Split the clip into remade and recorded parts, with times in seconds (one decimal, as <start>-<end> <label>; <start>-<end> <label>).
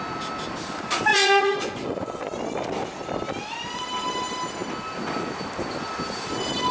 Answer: 0.0-1.1 recorded; 1.1-2.4 remade; 2.4-6.7 recorded